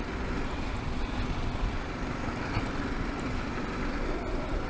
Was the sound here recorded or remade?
recorded